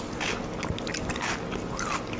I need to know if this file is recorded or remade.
recorded